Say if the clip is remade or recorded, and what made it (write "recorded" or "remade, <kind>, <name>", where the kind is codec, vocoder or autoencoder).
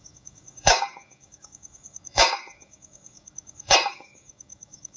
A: remade, codec, DAC